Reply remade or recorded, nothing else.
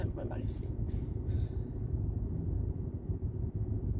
recorded